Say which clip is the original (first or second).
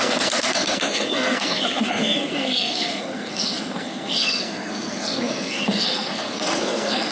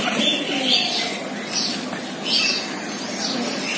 second